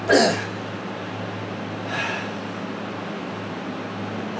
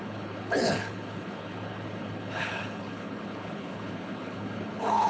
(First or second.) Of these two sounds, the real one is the first